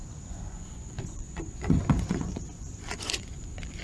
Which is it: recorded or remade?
remade